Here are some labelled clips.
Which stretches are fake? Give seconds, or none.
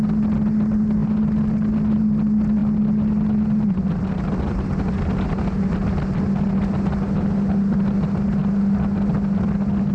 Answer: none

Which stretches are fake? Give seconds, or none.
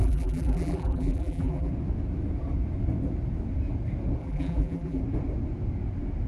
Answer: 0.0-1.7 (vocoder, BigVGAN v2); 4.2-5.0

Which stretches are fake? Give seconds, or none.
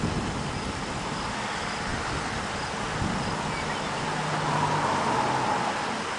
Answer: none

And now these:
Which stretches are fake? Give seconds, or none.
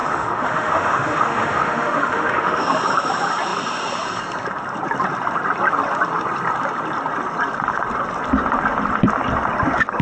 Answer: 0.0-2.6 (autoencoder, DAC-VAE)